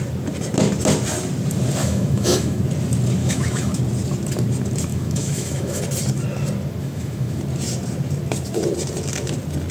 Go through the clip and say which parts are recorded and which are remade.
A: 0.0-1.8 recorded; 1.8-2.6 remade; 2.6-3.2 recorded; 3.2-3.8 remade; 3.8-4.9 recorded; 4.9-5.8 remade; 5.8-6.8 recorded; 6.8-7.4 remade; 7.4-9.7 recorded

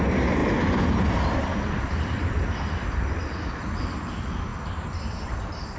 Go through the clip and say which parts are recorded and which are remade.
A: 0.0-5.8 recorded

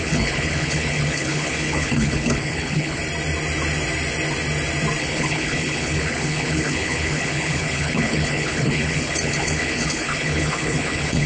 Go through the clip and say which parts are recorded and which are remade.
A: 0.0-3.0 remade; 3.0-5.0 recorded; 5.0-11.3 remade

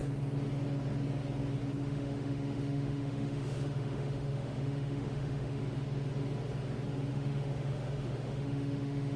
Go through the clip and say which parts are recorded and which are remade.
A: 0.0-1.8 recorded; 1.8-5.6 remade; 5.6-7.1 recorded; 7.1-9.2 remade

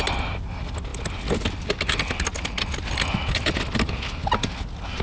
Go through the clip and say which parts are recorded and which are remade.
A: 0.0-5.0 recorded